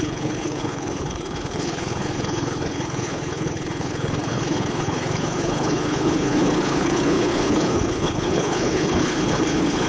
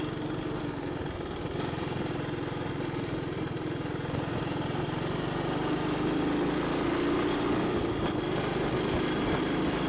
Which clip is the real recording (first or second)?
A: second